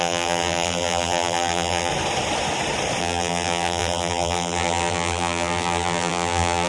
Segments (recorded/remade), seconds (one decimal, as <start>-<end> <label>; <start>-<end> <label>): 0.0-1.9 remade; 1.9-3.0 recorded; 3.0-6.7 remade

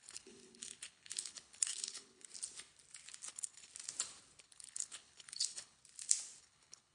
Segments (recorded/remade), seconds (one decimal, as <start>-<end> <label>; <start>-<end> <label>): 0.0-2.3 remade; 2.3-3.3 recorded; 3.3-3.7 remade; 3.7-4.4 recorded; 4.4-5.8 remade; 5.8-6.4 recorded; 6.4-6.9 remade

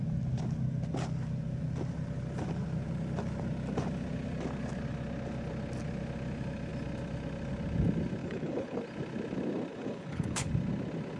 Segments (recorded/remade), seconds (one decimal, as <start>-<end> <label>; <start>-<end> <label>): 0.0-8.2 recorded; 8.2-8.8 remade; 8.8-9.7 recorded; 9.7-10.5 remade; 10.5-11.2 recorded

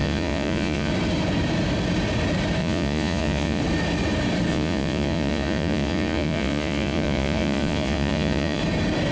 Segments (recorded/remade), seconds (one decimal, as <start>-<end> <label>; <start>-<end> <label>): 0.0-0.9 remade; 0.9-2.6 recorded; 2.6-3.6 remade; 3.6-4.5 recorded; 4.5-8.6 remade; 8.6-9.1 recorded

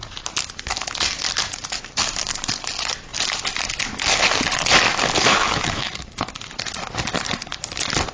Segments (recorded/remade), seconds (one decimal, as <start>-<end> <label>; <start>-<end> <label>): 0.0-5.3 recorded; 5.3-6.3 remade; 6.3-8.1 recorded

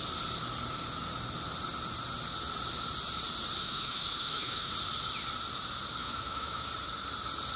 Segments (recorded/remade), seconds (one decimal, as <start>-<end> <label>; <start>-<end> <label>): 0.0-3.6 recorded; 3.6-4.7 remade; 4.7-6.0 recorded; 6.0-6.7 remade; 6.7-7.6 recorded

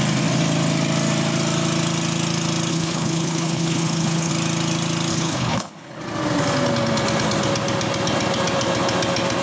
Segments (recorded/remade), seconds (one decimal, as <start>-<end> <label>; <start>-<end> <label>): 0.0-2.7 recorded; 2.7-4.3 remade; 4.3-5.1 recorded; 5.1-6.0 remade; 6.0-9.4 recorded